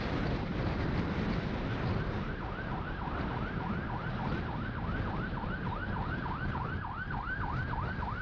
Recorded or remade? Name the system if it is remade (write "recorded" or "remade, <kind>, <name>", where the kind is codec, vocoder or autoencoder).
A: recorded